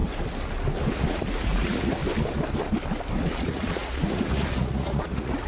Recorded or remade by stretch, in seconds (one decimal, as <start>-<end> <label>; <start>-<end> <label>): 0.0-0.9 recorded; 0.9-2.0 remade; 2.0-3.2 recorded; 3.2-5.5 remade

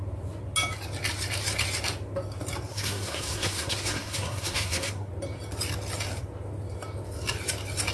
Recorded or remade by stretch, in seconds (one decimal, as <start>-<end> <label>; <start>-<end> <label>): 0.0-2.7 recorded; 2.7-5.1 remade; 5.1-7.9 recorded